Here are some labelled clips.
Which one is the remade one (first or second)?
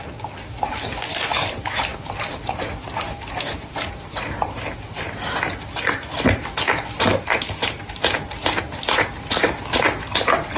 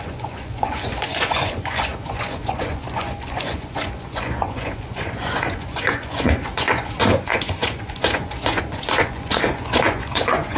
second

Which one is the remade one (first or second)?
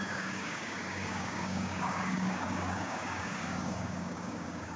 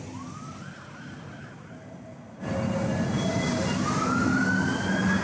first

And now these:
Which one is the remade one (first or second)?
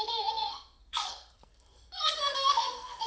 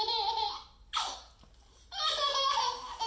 first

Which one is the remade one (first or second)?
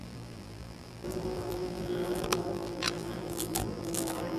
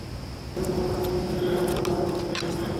first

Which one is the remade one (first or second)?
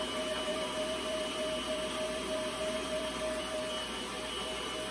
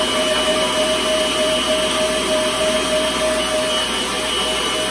first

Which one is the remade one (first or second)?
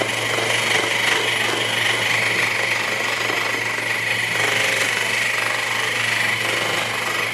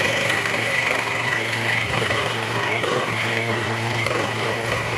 second